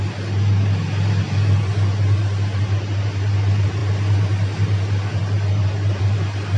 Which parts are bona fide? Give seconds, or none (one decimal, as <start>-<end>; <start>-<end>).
0.0-6.6